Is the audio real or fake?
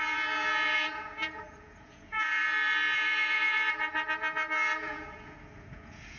fake